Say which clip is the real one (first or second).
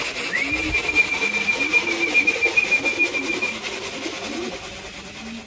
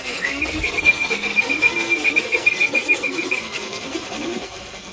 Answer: first